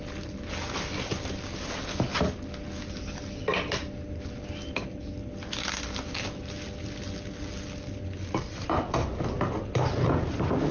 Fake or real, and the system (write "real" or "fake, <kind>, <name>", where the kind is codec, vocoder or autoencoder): real